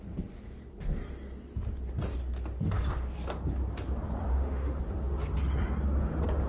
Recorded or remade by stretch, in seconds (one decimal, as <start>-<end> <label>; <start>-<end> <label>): 0.0-4.3 recorded; 4.3-4.8 remade; 4.8-6.5 recorded